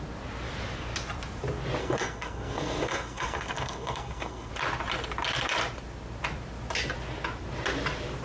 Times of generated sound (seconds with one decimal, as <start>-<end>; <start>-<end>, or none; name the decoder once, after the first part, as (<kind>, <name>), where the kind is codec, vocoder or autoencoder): 1.8-4.5 (codec, SNAC)